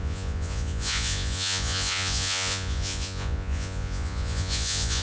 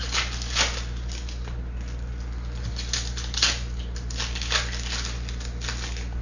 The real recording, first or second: second